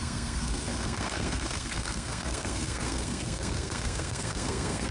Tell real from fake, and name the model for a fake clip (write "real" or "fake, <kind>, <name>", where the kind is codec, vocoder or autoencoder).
fake, codec, SNAC